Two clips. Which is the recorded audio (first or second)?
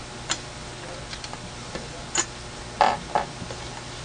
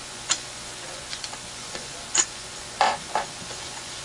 first